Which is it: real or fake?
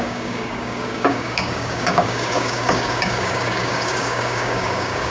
fake